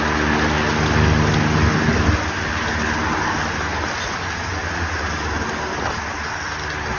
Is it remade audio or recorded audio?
recorded